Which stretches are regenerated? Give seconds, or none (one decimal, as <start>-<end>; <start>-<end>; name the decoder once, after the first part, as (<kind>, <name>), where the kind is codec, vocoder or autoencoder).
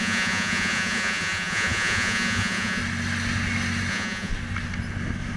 0.0-2.8 (vocoder, Vocos); 3.9-4.3